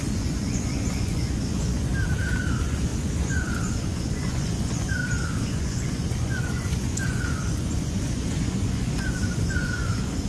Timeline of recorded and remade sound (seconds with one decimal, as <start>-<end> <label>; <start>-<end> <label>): 0.0-1.9 remade; 1.9-2.5 recorded; 2.5-10.3 remade